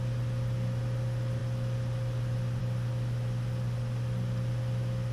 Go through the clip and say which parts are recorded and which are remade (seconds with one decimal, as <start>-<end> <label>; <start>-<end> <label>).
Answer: 0.0-5.1 recorded